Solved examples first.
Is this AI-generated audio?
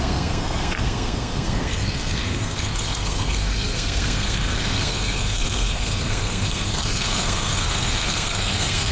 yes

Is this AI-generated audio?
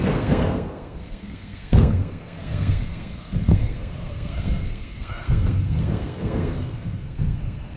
yes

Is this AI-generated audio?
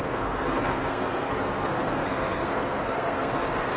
yes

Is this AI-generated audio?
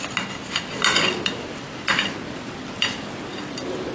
no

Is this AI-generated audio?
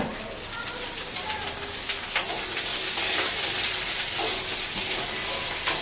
no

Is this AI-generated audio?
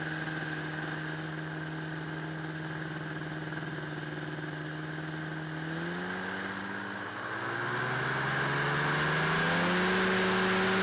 no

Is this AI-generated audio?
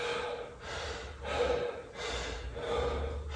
no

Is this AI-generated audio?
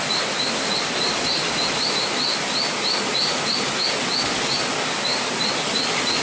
no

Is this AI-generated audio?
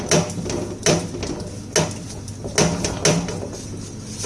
no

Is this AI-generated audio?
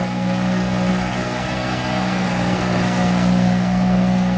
yes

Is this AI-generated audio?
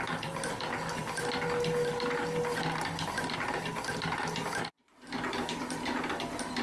no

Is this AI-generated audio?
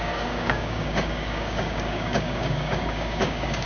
yes